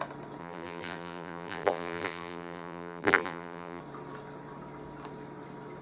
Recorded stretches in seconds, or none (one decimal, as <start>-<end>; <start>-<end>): 0.0-0.4; 3.8-5.8